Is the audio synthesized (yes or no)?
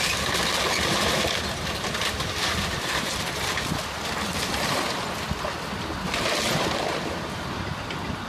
no